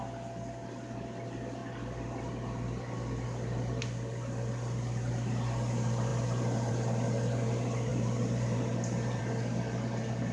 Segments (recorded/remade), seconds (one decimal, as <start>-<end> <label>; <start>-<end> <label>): 0.0-7.9 recorded; 7.9-9.2 remade; 9.2-10.3 recorded